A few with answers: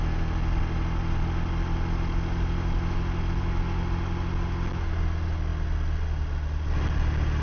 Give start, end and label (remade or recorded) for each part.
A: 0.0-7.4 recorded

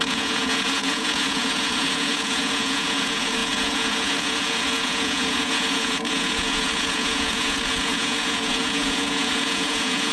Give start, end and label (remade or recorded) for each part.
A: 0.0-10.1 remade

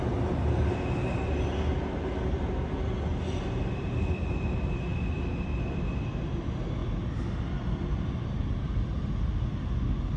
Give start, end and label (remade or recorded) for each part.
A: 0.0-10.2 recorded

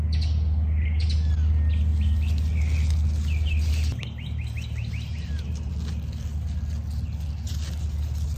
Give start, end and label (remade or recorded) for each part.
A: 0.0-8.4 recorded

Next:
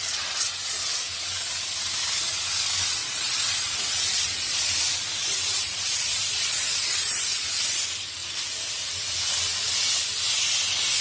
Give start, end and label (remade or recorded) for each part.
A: 0.0-3.0 recorded; 3.0-7.6 remade; 7.6-11.0 recorded